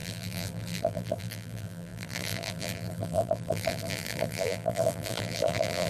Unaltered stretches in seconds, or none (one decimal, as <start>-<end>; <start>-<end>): none